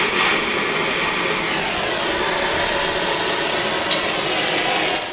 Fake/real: real